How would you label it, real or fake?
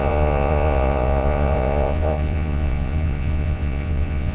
fake